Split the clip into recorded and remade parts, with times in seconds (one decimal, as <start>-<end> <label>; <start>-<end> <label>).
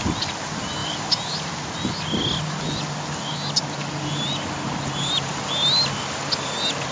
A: 0.0-0.8 recorded; 0.8-1.5 remade; 1.5-6.9 recorded